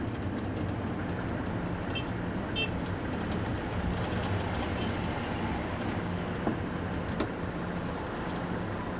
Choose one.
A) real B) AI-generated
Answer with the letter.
A